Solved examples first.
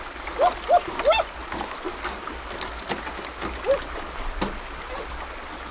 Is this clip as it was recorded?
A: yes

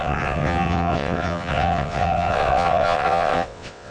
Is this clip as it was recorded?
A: no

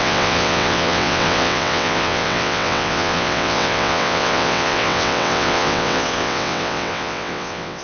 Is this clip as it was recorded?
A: no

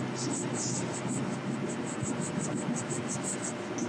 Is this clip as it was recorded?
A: yes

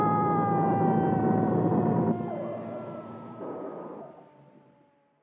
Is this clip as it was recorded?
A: yes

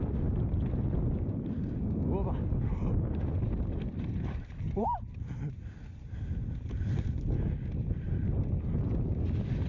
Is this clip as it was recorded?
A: yes